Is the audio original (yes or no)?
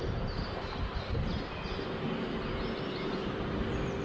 yes